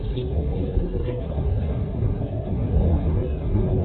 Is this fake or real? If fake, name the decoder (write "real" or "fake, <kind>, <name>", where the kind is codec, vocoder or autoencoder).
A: fake, codec, SNAC